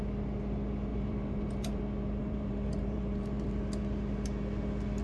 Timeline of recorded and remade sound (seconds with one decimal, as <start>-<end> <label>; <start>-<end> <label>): 0.0-0.9 recorded; 0.9-1.8 remade; 1.8-2.2 recorded; 2.2-3.6 remade; 3.6-5.0 recorded